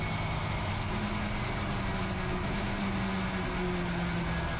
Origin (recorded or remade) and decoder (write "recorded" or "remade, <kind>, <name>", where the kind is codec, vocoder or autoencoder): recorded